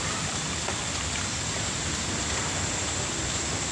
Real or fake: real